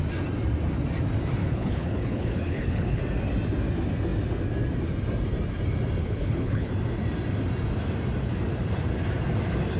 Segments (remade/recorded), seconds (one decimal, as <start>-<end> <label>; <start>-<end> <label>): 0.0-1.4 recorded; 1.4-3.0 remade; 3.0-6.0 recorded; 6.0-6.7 remade; 6.7-9.8 recorded